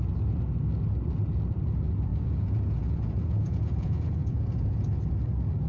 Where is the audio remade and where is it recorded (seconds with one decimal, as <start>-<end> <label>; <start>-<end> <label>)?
0.0-2.1 recorded; 2.1-4.8 remade; 4.8-5.7 recorded